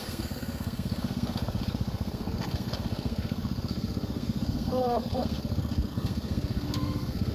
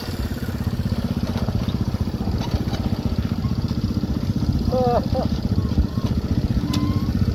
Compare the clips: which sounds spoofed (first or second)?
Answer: first